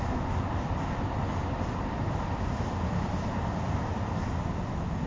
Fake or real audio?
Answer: real